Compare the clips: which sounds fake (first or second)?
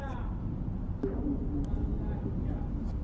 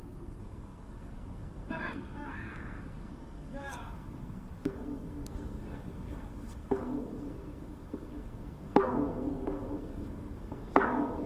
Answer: second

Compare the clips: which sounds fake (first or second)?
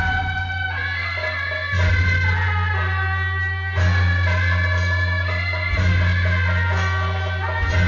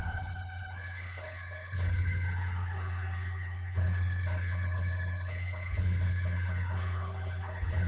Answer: second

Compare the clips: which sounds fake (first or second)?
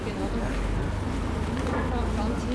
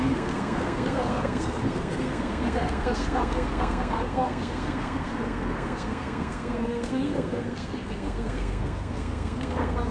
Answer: second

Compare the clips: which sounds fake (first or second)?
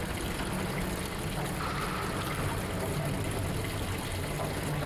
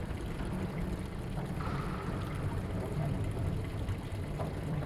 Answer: second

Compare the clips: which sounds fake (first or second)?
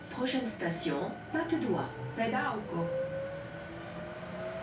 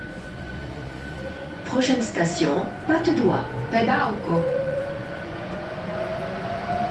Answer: second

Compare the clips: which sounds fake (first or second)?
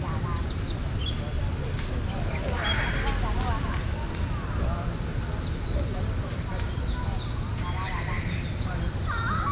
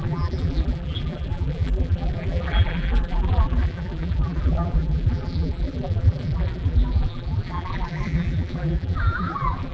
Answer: second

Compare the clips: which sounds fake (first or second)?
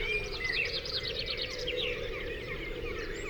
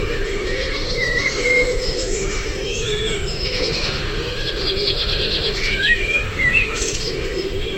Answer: second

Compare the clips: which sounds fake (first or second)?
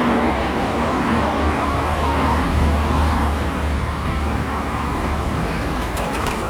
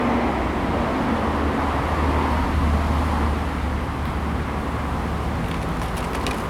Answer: first